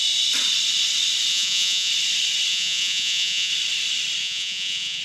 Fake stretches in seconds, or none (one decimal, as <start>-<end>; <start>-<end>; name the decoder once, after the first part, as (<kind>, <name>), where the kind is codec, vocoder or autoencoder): 1.3-1.9 (vocoder, Vocos); 2.5-3.5; 4.2-5.0